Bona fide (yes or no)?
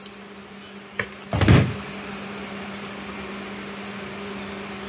yes